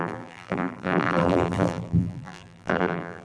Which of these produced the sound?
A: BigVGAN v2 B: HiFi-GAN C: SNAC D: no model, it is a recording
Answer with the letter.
A